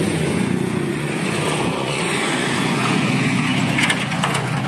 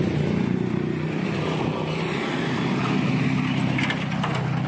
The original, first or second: second